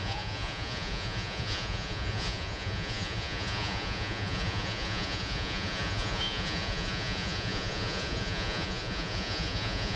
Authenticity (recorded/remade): remade